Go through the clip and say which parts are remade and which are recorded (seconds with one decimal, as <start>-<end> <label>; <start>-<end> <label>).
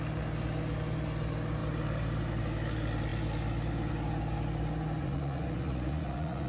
0.0-5.0 recorded; 5.0-6.5 remade